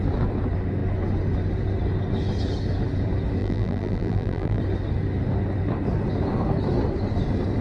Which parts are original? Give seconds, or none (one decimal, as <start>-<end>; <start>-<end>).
0.0-3.4; 4.6-7.6

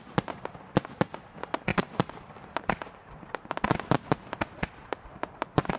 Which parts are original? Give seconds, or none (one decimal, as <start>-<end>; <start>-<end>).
0.0-1.7; 2.9-5.1